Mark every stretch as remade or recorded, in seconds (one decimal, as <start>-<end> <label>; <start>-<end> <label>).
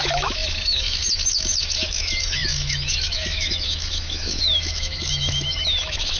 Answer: 0.0-6.2 remade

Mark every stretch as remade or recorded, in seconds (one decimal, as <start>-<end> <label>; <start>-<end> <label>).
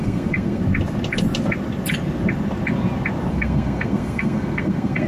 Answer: 0.0-0.6 remade; 0.6-3.3 recorded; 3.3-5.1 remade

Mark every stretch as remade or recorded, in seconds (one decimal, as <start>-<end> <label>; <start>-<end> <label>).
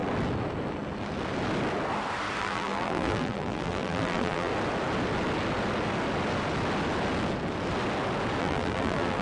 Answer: 0.0-2.4 recorded; 2.4-4.5 remade; 4.5-8.4 recorded; 8.4-9.2 remade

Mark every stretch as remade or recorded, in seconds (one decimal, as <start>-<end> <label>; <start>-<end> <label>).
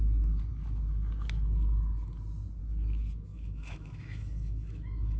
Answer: 0.0-3.3 recorded; 3.3-5.2 remade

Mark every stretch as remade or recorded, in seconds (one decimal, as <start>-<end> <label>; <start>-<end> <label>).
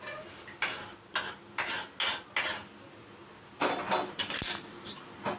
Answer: 0.0-5.4 recorded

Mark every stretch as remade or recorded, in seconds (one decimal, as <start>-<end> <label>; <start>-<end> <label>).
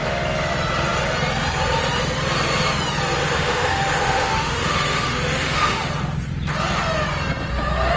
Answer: 0.0-3.2 recorded; 3.2-5.8 remade; 5.8-8.0 recorded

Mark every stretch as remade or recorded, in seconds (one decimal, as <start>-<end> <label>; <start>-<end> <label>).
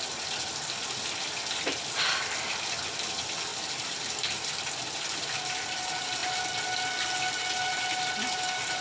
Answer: 0.0-8.8 recorded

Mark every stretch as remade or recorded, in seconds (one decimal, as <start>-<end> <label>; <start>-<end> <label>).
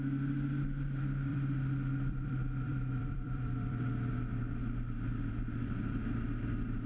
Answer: 0.0-1.3 recorded; 1.3-3.8 remade; 3.8-6.9 recorded